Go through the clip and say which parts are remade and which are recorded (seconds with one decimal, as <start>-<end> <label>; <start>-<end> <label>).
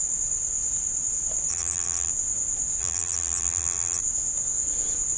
0.0-1.5 recorded; 1.5-2.1 remade; 2.1-2.8 recorded; 2.8-4.0 remade; 4.0-5.2 recorded